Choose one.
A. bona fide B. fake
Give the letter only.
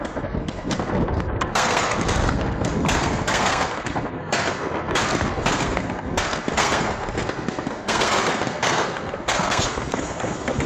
B